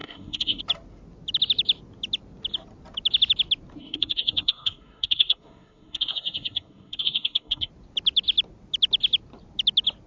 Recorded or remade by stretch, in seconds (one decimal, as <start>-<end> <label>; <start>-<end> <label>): 0.0-0.6 remade; 0.6-3.8 recorded; 3.8-7.7 remade; 7.7-10.1 recorded